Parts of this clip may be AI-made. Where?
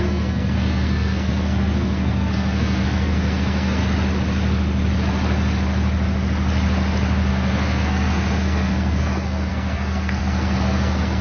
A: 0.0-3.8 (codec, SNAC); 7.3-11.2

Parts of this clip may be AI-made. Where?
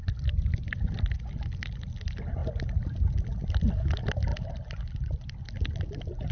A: none